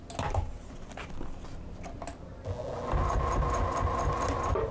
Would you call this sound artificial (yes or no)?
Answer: no